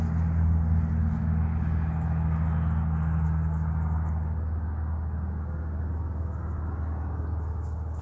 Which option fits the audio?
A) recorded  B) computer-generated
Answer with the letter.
A